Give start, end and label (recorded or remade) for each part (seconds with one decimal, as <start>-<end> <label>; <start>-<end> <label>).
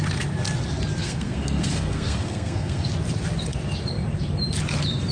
0.0-1.0 recorded; 1.0-2.9 remade; 2.9-5.1 recorded